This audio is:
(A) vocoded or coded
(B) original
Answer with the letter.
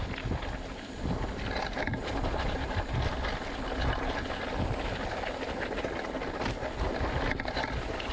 B